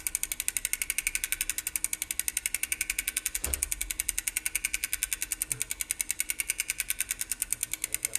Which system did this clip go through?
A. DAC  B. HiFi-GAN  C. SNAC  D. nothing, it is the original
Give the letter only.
D